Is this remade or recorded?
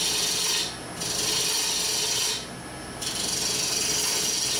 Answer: recorded